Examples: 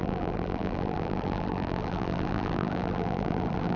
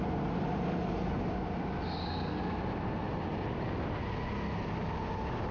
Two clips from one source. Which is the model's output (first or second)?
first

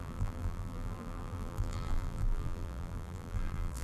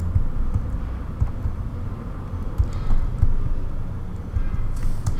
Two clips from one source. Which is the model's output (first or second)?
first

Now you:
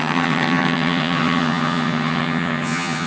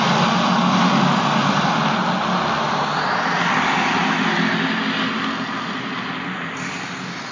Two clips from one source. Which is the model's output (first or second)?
first